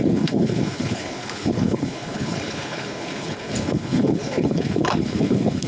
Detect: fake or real fake